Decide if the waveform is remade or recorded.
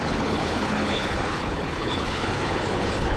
remade